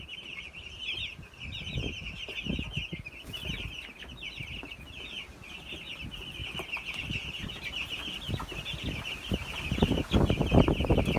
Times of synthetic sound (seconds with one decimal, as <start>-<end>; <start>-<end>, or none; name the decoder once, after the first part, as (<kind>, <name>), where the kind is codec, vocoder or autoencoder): none

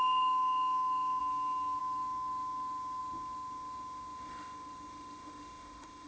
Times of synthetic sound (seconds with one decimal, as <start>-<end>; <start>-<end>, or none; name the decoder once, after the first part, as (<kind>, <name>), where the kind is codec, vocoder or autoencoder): 0.0-1.2 (autoencoder, DAC-VAE); 1.8-6.1

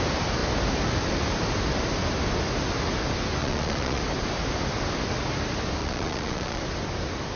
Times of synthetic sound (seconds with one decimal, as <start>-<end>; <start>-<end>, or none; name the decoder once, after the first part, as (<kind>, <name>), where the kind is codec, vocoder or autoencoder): 3.4-4.0 (vocoder, Vocos); 5.8-6.6

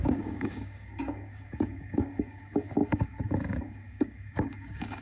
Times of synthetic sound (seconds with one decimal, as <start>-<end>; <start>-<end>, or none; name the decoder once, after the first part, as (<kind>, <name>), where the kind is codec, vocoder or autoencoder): 0.0-5.0 (codec, DAC)

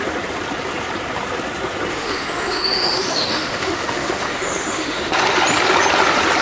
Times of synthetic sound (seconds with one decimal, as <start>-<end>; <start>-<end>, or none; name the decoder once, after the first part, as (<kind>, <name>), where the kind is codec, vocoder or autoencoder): 1.9-5.1 (autoencoder, DAC-VAE)

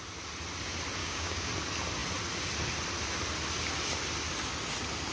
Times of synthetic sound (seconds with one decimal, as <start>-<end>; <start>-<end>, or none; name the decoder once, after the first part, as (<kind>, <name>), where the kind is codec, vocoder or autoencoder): 1.0-1.5 (codec, DAC)

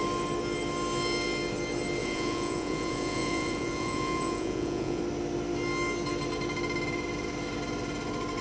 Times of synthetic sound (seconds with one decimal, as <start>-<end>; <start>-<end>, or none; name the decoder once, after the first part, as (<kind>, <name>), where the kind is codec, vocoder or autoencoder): 2.0-5.0 (vocoder, Vocos)

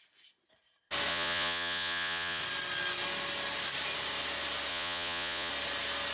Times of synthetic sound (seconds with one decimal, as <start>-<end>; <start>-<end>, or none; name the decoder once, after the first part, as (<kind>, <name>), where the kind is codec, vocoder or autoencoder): 1.1-2.4 (vocoder, Vocos); 4.7-5.5